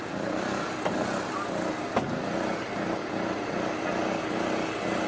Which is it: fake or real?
real